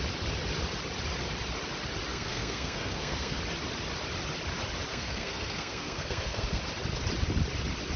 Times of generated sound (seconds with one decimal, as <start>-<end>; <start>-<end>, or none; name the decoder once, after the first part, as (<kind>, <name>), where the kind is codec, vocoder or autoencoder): 2.1-3.4 (codec, SNAC); 4.9-6.6